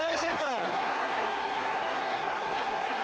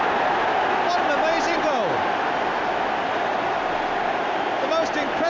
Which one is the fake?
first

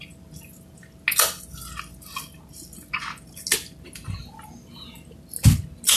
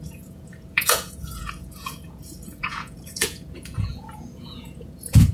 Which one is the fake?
second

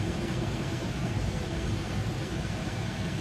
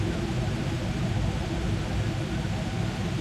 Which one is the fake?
first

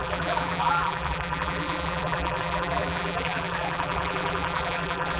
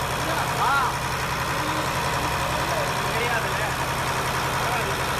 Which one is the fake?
first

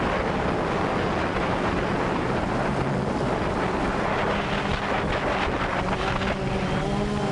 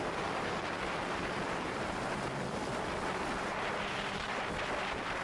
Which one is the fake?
second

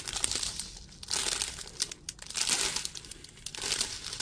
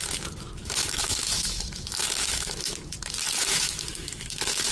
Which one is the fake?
second